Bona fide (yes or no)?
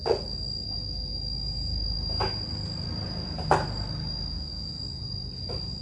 yes